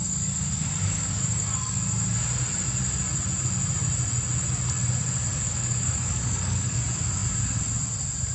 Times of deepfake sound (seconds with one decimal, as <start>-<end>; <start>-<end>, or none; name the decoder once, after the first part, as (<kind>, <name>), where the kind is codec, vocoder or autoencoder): 0.0-1.8 (codec, DAC); 5.3-6.8